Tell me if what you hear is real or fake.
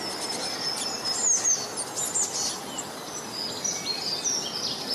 real